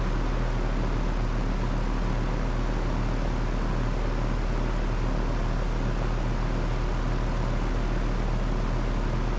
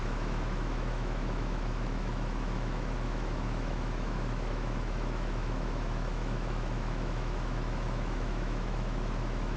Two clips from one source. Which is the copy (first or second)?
second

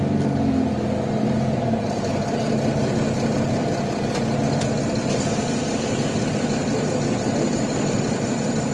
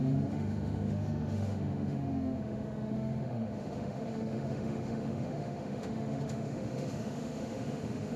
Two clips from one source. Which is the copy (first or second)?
second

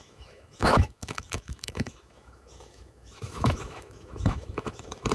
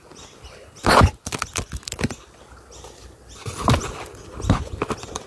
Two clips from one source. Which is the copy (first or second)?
first